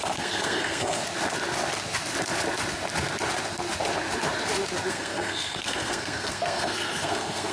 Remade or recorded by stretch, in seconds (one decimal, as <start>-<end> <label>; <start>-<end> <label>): 0.0-1.0 remade; 1.0-4.9 recorded; 4.9-7.5 remade